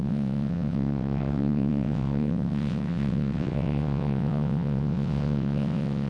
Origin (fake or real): fake